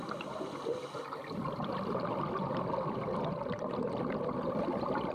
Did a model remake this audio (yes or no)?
no